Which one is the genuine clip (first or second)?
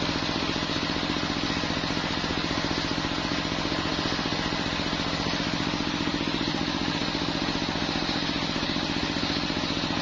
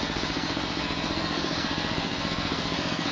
first